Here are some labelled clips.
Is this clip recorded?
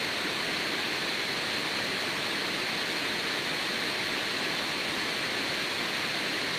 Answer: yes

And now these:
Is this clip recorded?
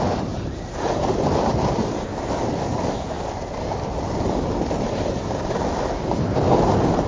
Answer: yes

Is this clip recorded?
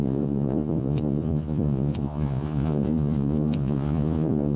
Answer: no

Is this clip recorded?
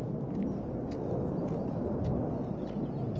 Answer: yes